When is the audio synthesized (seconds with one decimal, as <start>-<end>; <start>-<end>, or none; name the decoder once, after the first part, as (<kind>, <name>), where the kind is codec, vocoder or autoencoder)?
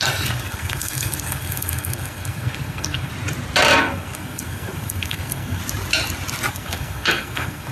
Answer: 0.0-3.1 (codec, SNAC); 3.8-5.6; 6.5-7.7